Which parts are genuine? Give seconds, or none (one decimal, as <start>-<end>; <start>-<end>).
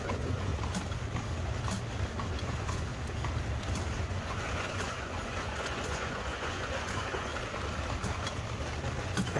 0.5-2.4; 2.9-4.0; 7.3-9.0